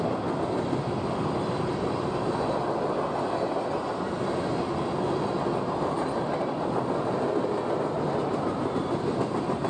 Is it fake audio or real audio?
real